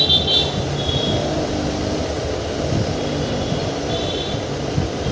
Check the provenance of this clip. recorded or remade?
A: recorded